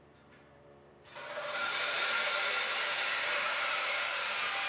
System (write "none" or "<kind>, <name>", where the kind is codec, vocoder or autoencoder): vocoder, BigVGAN v2